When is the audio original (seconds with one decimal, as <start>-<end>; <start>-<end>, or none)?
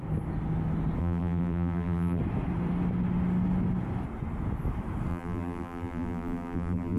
0.0-1.0; 2.2-5.1